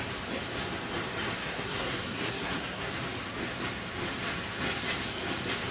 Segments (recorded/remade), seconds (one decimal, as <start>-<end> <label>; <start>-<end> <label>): 0.0-1.4 recorded; 1.4-2.9 remade; 2.9-5.7 recorded